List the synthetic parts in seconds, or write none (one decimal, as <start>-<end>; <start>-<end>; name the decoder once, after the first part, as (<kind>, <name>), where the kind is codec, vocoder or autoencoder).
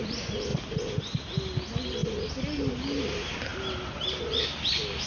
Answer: none